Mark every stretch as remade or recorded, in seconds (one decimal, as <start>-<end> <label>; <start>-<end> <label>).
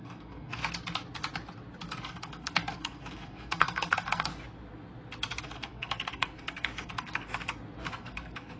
0.0-0.6 remade; 0.6-2.0 recorded; 2.0-4.3 remade; 4.3-5.4 recorded; 5.4-7.3 remade; 7.3-7.9 recorded; 7.9-8.6 remade